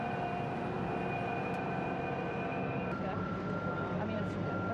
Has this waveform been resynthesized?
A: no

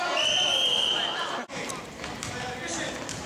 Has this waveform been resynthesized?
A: yes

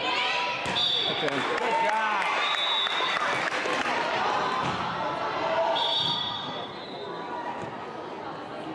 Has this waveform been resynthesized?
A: no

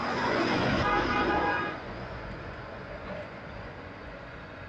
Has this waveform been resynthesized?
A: yes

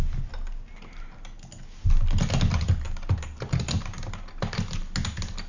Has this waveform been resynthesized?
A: no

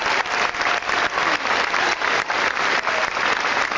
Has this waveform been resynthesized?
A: no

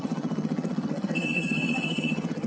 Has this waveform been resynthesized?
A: yes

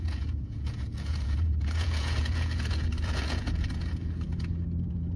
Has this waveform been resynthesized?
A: yes